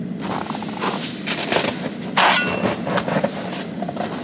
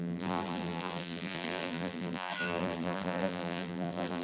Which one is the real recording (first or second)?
first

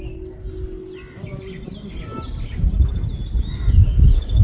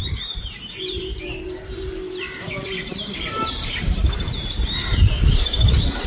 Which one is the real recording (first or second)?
first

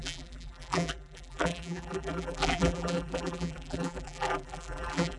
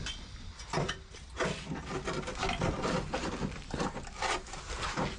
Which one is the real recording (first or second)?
second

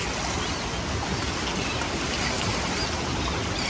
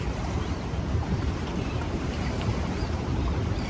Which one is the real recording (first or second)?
first